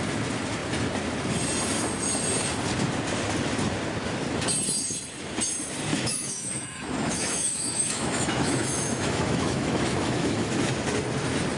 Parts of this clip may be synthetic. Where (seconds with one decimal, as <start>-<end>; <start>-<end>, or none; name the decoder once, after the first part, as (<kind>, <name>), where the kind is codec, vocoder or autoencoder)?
5.9-10.7 (autoencoder, DAC-VAE)